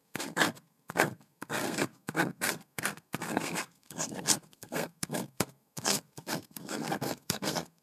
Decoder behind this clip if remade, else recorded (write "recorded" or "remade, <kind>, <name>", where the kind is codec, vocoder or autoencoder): remade, codec, SNAC